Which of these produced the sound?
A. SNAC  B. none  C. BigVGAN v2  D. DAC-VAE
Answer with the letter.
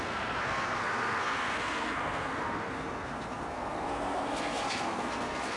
A